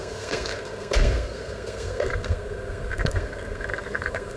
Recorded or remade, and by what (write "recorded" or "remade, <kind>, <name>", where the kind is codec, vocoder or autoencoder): remade, codec, SNAC